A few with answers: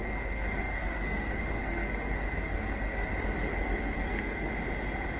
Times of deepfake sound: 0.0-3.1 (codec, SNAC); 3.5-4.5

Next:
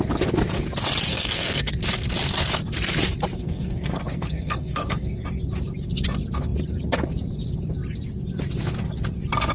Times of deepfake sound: 1.1-1.7 (codec, SNAC); 3.3-5.2

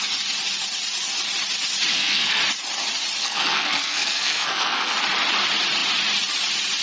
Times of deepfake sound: 1.9-2.4 (codec, SNAC); 3.2-4.9

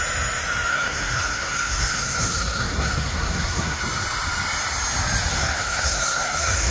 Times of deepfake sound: 0.7-3.8 (codec, SNAC); 5.3-6.7

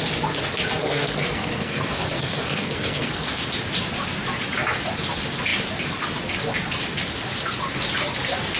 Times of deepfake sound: 0.8-3.4 (codec, SNAC)

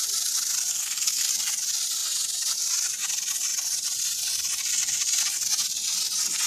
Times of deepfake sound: 0.7-1.3 (codec, SNAC)